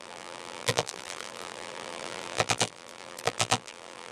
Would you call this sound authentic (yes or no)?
no